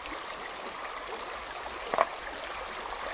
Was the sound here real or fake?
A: real